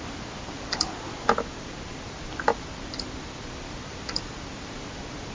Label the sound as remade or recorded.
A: recorded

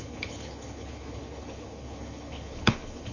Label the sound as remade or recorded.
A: remade